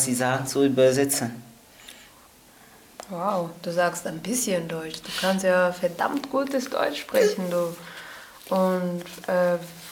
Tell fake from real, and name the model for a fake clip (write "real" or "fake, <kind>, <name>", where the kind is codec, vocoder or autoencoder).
real